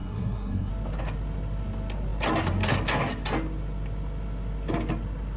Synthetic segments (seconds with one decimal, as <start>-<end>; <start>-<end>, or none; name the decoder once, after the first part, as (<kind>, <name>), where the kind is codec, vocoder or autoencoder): 0.0-0.7 (codec, SNAC)